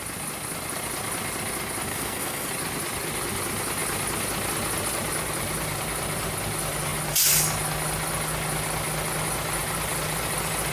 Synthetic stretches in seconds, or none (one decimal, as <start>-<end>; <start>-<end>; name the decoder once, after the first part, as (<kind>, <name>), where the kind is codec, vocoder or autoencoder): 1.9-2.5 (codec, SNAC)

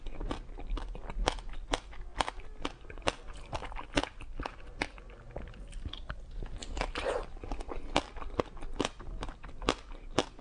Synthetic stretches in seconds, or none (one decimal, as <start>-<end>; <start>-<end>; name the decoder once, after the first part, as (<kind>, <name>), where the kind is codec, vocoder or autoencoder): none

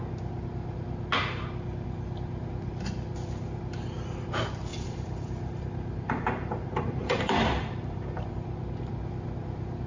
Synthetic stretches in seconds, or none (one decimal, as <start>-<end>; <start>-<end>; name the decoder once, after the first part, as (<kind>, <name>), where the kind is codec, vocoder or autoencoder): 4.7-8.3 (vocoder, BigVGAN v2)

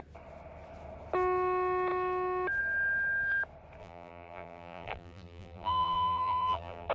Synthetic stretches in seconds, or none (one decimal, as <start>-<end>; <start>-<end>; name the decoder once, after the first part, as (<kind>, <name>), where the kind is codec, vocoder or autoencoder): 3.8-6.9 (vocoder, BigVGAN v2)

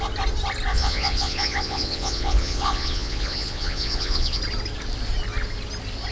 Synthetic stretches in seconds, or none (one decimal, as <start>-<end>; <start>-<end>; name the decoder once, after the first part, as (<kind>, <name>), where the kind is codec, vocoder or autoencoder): 0.7-4.4 (vocoder, Vocos)

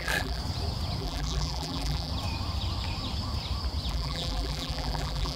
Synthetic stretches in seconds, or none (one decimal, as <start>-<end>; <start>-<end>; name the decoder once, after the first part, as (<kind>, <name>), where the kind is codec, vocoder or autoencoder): 0.0-0.4 (vocoder, BigVGAN v2); 1.0-2.1; 3.9-5.4